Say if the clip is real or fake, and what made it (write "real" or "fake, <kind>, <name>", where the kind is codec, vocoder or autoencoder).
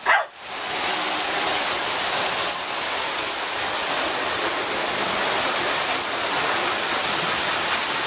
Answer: real